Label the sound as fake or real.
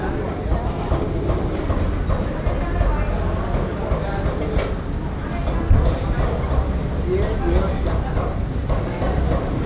real